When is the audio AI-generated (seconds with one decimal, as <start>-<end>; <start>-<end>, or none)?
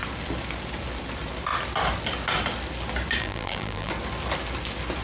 3.2-3.9